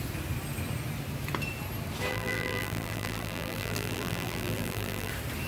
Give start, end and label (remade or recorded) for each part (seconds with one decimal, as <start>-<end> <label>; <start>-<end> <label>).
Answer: 0.0-2.1 recorded; 2.1-5.1 remade; 5.1-5.5 recorded